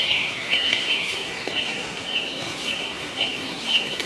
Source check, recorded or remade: remade